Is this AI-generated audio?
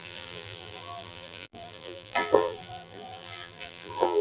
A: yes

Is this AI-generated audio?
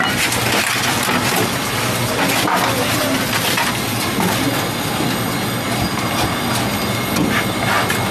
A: no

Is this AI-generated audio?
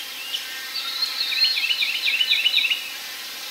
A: no